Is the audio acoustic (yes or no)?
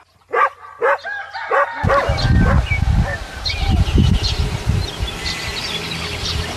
yes